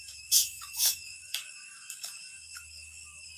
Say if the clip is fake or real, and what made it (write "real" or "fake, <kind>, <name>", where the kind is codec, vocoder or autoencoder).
fake, codec, DAC